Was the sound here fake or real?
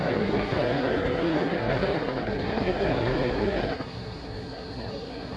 fake